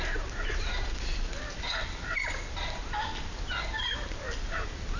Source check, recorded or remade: recorded